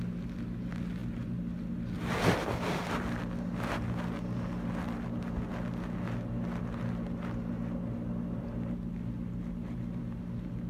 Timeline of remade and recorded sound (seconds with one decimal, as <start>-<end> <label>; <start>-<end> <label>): 0.0-10.7 recorded

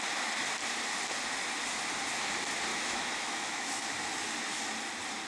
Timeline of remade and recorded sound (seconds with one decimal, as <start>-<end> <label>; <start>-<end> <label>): 0.0-2.7 recorded; 2.7-3.8 remade; 3.8-5.3 recorded